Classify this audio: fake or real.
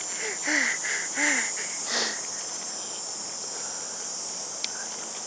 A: real